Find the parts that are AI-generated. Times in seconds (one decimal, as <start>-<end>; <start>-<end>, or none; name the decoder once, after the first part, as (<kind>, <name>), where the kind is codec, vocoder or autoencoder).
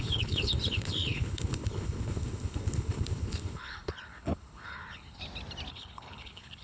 0.0-5.2 (codec, HILCodec); 5.7-6.6